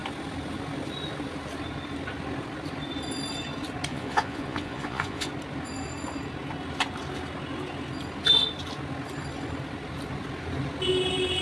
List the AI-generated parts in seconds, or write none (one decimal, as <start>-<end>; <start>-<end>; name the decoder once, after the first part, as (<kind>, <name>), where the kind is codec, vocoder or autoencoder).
3.9-5.3 (vocoder, Vocos)